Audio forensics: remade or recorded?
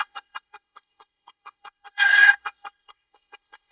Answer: remade